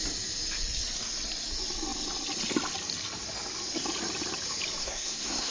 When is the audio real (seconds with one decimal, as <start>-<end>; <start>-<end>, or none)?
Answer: 0.0-4.8